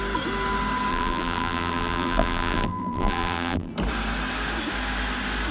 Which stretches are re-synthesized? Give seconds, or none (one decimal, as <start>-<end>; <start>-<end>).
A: 0.9-3.7